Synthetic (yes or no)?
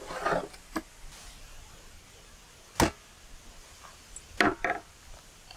no